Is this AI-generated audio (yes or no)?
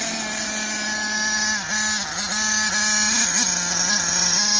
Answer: no